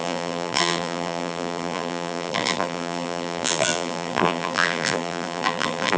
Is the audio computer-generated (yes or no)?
yes